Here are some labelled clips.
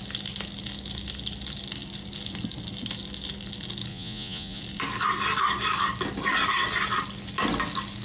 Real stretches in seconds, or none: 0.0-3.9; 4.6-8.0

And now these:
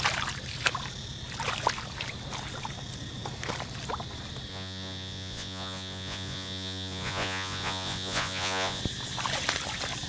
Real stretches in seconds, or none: 0.0-4.5; 8.8-10.1

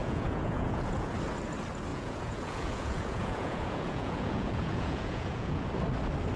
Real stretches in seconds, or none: 1.1-1.9; 5.7-6.4